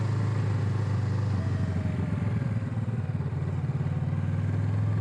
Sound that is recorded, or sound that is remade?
recorded